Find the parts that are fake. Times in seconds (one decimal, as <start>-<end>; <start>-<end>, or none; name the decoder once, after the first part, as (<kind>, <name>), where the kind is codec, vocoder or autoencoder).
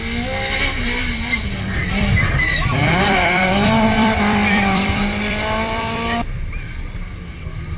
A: 1.8-6.5 (vocoder, BigVGAN v2)